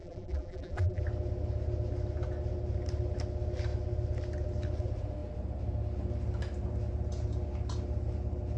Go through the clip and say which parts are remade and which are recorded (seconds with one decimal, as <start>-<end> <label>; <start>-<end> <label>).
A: 0.0-1.0 remade; 1.0-8.6 recorded